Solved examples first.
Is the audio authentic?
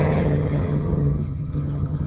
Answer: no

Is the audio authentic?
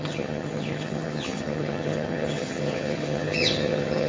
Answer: no